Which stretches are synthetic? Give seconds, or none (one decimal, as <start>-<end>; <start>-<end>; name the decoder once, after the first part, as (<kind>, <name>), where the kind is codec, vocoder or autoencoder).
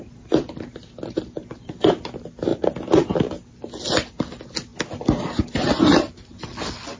none